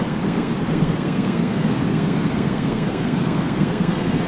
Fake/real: fake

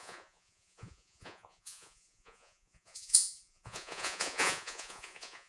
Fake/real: fake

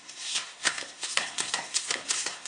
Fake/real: fake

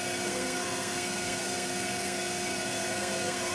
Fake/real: fake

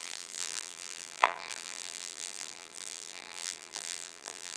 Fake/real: fake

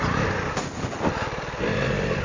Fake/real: real